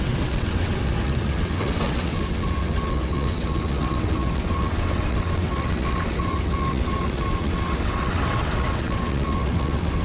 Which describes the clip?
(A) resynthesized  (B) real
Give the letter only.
A